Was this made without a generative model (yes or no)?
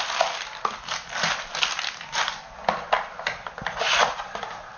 yes